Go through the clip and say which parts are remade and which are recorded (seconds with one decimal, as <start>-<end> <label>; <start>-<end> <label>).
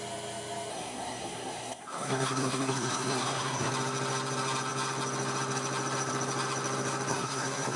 0.0-0.7 recorded; 0.7-3.7 remade; 3.7-7.1 recorded; 7.1-7.8 remade